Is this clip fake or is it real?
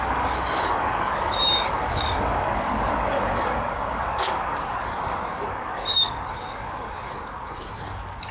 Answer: fake